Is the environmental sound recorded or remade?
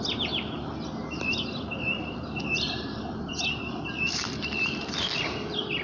recorded